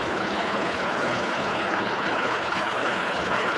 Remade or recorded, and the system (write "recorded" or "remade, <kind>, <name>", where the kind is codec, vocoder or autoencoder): remade, codec, HILCodec